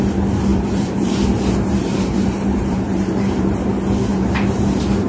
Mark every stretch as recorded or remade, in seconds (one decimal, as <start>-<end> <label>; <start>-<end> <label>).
0.0-0.5 recorded; 0.5-3.6 remade; 3.6-4.1 recorded; 4.1-5.1 remade